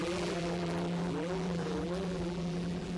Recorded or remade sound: remade